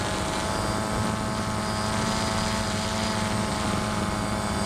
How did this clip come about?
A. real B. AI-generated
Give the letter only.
A